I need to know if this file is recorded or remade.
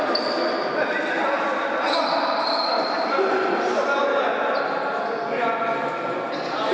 recorded